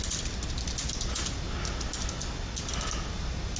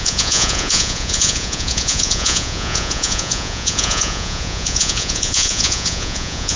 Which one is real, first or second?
first